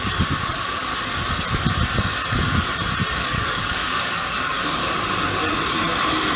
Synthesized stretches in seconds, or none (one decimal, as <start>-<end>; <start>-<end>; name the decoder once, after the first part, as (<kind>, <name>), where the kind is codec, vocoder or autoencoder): 0.0-0.9 (codec, DAC); 3.1-4.8